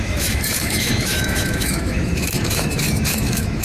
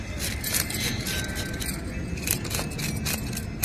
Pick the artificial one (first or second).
first